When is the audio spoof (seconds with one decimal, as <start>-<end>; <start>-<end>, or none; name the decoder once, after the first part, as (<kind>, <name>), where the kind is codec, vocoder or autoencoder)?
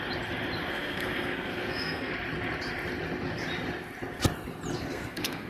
0.7-2.1 (codec, SNAC); 4.7-5.5